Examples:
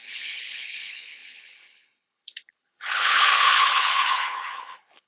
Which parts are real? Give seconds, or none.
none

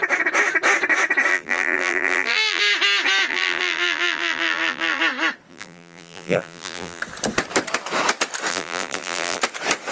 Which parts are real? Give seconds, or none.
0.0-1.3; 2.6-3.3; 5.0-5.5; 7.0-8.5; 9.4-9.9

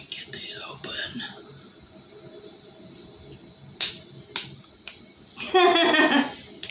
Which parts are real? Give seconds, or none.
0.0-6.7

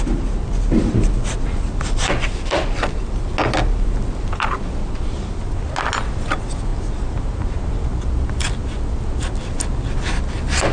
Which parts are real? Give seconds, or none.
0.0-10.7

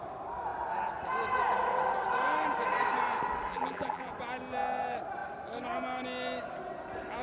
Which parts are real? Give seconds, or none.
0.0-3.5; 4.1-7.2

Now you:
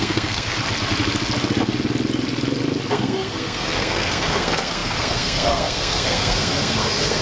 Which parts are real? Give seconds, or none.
0.6-2.9

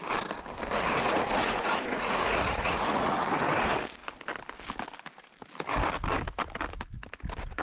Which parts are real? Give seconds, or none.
0.0-1.0; 3.3-7.6